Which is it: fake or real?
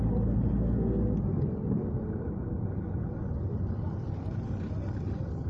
real